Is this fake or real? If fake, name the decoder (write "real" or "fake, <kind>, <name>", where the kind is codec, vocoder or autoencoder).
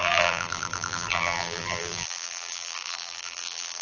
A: fake, vocoder, BigVGAN v2